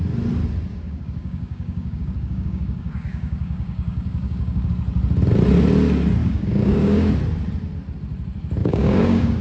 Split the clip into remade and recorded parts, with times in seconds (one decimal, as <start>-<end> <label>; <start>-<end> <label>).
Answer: 0.0-0.7 recorded; 0.7-4.7 remade; 4.7-6.2 recorded; 6.2-7.1 remade; 7.1-8.6 recorded; 8.6-9.4 remade